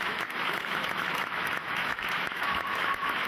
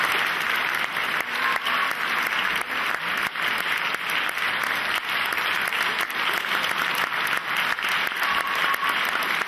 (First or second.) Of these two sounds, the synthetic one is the first